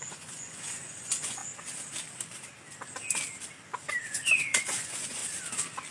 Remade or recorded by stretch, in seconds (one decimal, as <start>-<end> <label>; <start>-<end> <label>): 0.0-1.4 remade; 1.4-4.0 recorded; 4.0-5.2 remade; 5.2-5.9 recorded